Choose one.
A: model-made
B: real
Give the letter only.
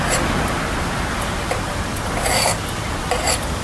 B